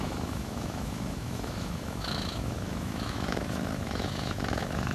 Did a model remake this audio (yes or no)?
yes